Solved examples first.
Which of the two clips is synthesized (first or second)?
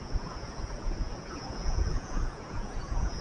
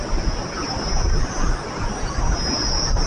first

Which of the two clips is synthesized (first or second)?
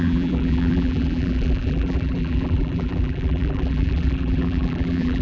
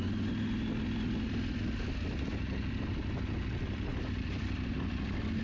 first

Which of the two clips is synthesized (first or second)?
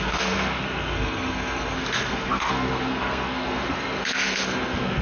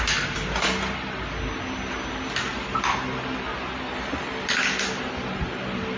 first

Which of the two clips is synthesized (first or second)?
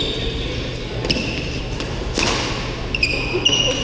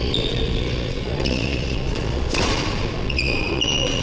second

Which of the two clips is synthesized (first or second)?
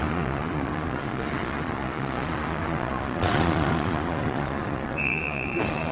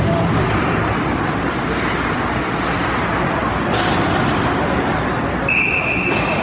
first